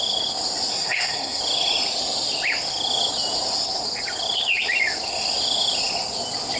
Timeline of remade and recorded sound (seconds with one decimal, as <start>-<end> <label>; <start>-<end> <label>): 0.0-0.7 recorded; 0.7-1.4 remade; 1.4-6.6 recorded